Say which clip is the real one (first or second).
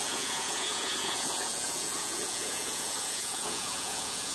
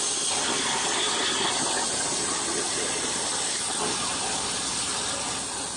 second